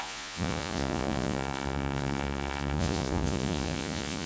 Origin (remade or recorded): remade